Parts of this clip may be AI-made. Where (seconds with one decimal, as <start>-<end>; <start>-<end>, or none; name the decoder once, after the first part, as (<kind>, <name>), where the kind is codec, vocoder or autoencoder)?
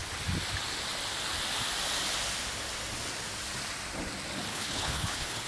4.5-5.5 (codec, HILCodec)